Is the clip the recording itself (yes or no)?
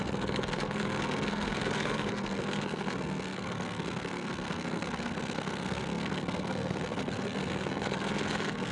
no